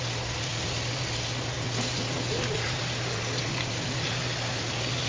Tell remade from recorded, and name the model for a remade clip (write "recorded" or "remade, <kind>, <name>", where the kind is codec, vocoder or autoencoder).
recorded